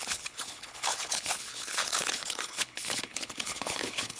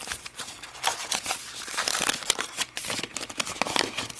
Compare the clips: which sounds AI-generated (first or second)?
first